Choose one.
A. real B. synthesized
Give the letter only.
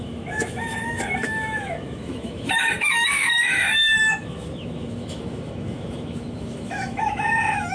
B